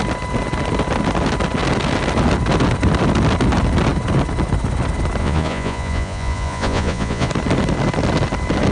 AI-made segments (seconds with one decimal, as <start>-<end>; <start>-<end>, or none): 5.2-7.3